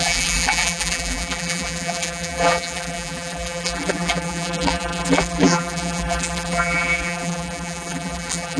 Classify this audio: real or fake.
fake